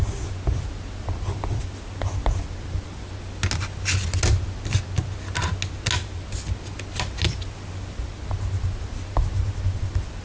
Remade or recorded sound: recorded